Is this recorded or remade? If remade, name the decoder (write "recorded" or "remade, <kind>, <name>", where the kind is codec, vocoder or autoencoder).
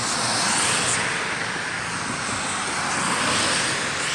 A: recorded